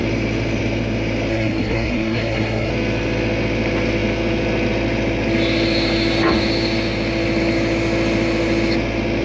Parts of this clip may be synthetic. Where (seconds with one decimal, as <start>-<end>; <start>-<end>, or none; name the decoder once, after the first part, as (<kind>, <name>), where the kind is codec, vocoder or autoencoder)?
1.3-2.7 (codec, SNAC)